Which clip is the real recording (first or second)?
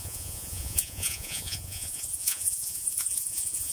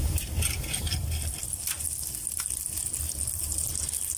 second